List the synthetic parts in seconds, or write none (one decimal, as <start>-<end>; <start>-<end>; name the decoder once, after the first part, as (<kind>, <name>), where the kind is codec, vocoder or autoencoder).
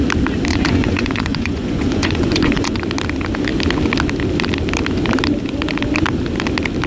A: 0.5-2.8 (vocoder, Vocos)